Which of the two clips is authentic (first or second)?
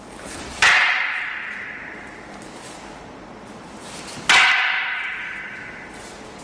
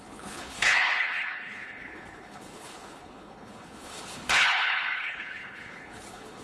first